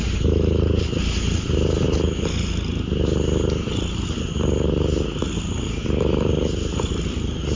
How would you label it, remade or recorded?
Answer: recorded